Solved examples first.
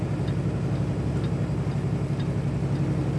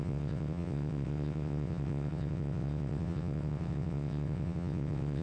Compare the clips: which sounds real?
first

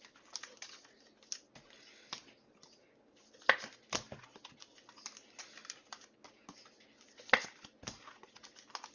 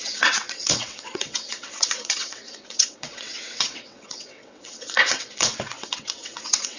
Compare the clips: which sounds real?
first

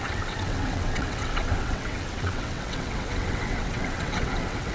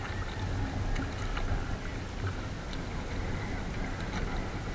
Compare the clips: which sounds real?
second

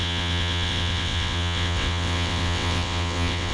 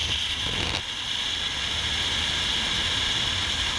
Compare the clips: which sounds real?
second